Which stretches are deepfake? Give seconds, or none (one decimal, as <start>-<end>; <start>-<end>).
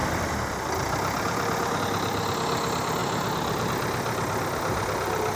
0.0-1.8